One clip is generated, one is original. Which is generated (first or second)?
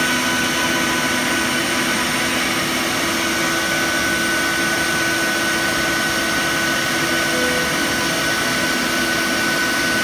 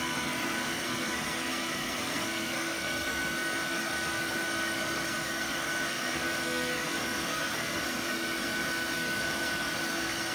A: second